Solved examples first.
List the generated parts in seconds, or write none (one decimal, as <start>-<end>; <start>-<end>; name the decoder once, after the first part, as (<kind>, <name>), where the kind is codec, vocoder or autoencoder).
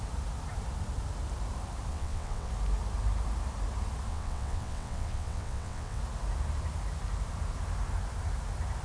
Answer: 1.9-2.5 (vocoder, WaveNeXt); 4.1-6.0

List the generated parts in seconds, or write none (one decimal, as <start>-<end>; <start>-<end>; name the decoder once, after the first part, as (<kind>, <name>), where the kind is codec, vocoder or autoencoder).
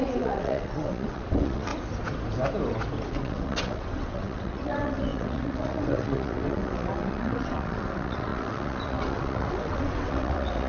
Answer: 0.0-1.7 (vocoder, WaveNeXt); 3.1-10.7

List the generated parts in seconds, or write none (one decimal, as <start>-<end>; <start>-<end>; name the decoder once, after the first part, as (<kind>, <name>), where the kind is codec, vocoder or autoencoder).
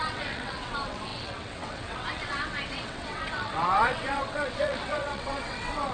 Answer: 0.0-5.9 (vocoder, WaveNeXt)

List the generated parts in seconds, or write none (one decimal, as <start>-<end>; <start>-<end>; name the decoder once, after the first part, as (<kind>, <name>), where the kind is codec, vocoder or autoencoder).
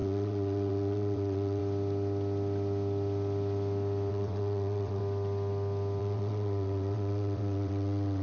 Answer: 0.0-1.6 (vocoder, WaveNeXt); 4.1-5.0; 6.0-8.2